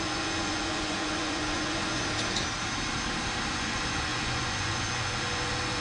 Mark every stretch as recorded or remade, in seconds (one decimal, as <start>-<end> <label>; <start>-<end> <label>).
0.0-2.0 remade; 2.0-3.5 recorded; 3.5-5.8 remade